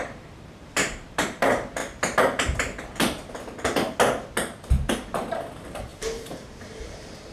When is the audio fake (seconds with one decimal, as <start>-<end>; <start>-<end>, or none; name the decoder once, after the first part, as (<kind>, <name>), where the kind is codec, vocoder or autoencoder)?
0.0-1.8 (vocoder, BigVGAN v2); 4.9-7.3